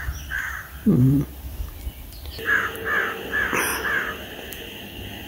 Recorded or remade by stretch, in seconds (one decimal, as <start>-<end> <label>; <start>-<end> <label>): 0.0-3.7 remade; 3.7-4.5 recorded; 4.5-5.3 remade